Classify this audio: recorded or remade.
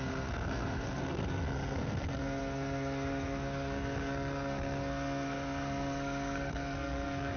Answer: remade